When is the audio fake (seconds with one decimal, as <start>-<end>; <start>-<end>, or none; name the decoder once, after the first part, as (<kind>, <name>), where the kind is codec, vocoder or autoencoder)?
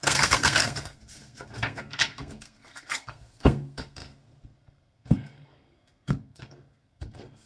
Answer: 0.0-7.5 (codec, SNAC)